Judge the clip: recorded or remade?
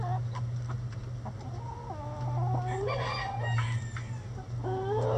recorded